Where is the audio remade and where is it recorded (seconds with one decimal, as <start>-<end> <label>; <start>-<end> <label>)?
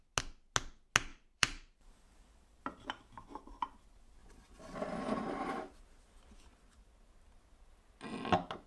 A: 0.0-1.1 recorded; 1.1-3.1 remade; 3.1-8.7 recorded